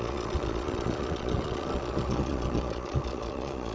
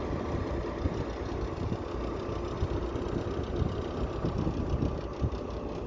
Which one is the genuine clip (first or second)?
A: second